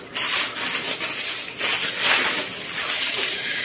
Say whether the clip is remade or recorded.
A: recorded